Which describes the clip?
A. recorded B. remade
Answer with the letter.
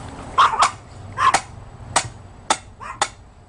A